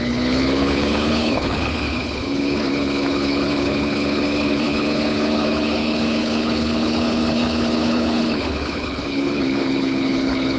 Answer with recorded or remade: remade